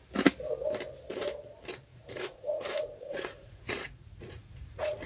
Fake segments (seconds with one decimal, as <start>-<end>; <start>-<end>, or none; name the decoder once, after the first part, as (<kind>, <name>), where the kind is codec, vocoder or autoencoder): 1.9-5.1 (vocoder, Vocos)